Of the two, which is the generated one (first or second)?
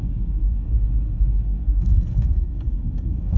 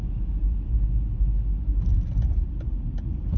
first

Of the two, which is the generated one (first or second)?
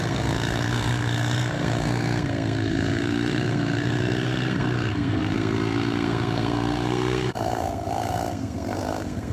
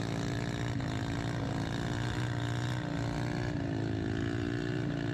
first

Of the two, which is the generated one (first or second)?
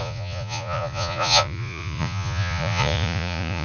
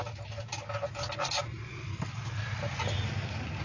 first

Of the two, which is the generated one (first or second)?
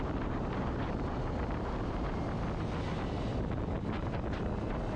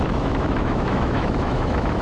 second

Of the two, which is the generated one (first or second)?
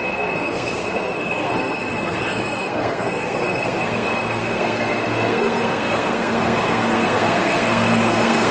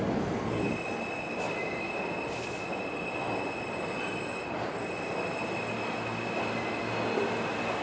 first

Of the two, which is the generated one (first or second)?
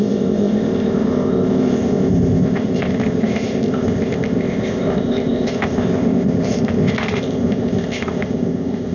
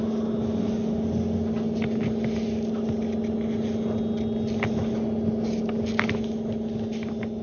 first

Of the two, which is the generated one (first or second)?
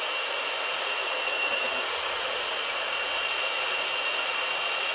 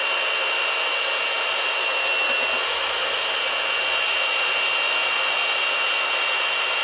first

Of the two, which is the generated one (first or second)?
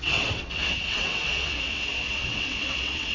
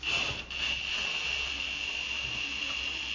first